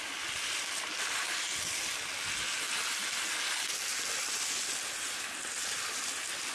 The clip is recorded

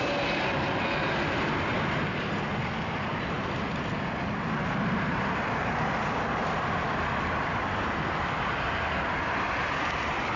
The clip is recorded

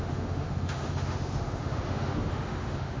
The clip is remade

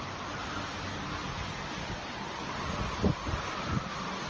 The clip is recorded